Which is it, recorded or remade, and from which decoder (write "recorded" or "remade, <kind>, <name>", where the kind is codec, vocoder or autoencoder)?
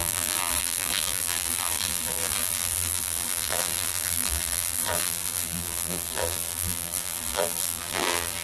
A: remade, vocoder, BigVGAN v2